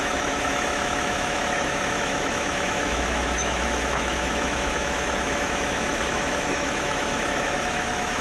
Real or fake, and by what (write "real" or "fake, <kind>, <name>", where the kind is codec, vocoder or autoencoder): fake, autoencoder, DAC-VAE